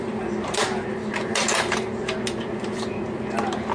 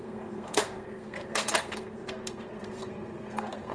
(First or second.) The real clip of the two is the first